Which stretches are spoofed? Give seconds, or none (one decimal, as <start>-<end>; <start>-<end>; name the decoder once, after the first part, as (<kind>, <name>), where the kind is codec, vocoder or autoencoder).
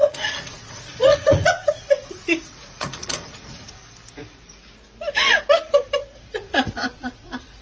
0.0-3.8 (vocoder, Vocos); 6.2-7.6